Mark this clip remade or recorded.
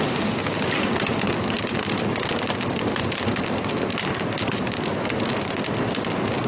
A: recorded